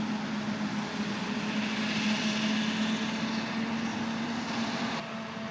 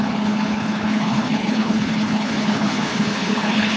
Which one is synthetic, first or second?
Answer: second